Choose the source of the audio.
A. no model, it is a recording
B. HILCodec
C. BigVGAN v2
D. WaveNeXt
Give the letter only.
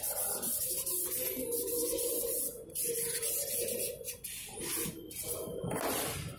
A